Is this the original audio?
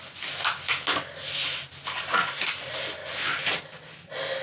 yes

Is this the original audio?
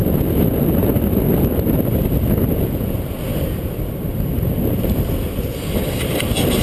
yes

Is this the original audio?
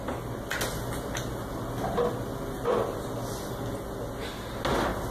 yes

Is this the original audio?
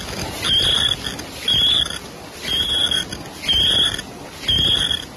yes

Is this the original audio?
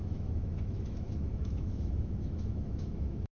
no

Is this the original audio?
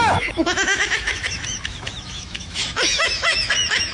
no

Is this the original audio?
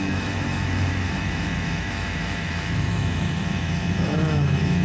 no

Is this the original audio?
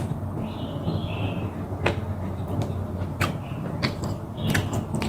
yes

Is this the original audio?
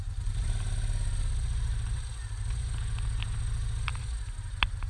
yes